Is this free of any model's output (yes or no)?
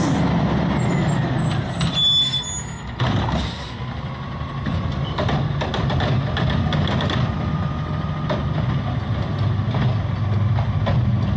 yes